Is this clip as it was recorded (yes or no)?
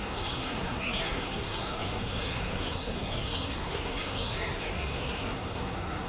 no